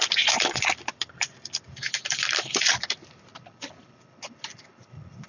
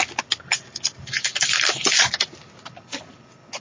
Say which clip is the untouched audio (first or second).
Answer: second